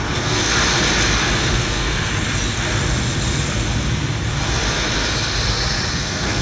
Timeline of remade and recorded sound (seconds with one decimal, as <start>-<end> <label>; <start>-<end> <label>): 0.0-0.4 remade; 0.4-1.4 recorded; 1.4-2.1 remade; 2.1-5.9 recorded; 5.9-6.4 remade